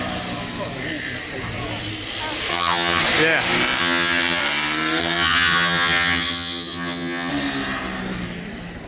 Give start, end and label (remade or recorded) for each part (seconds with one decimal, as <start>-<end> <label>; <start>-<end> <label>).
0.0-2.5 recorded; 2.5-3.0 remade; 3.0-3.8 recorded; 3.8-4.4 remade; 4.4-5.0 recorded; 5.0-7.3 remade; 7.3-8.9 recorded

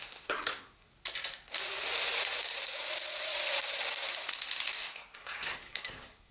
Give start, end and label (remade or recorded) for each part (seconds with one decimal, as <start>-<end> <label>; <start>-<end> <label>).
0.0-0.9 remade; 0.9-4.7 recorded; 4.7-6.3 remade

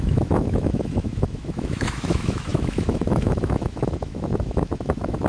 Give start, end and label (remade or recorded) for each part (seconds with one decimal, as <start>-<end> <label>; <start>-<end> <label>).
0.0-5.3 remade